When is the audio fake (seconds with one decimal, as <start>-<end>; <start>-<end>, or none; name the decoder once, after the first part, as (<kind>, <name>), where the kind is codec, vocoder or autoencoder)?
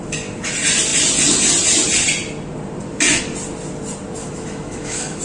4.2-5.2 (autoencoder, DAC-VAE)